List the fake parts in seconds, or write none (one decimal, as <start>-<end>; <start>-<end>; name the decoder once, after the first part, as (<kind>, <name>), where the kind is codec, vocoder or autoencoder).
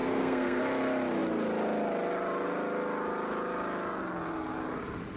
0.0-0.6 (codec, SNAC)